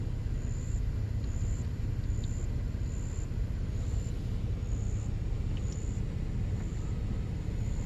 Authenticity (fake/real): real